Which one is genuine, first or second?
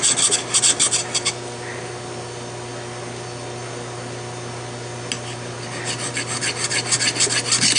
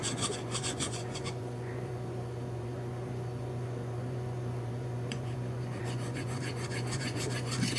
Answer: first